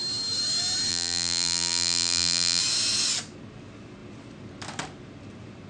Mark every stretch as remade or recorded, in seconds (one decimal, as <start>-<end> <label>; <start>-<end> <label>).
0.0-0.9 recorded; 0.9-2.6 remade; 2.6-5.7 recorded